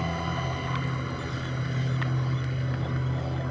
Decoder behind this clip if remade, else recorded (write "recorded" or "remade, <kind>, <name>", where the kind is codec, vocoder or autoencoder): recorded